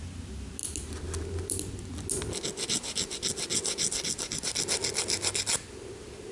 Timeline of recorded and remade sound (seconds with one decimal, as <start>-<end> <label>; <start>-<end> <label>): 0.0-6.3 recorded